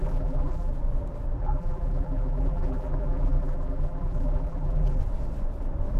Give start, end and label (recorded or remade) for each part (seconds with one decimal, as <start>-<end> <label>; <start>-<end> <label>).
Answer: 0.0-0.7 remade; 0.7-1.4 recorded; 1.4-5.0 remade; 5.0-6.0 recorded